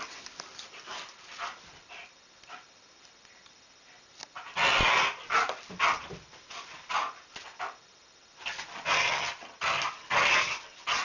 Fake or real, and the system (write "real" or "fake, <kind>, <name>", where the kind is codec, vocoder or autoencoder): real